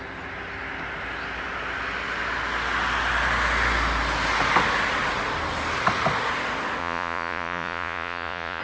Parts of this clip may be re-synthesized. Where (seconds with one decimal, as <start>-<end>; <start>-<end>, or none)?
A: 6.8-8.6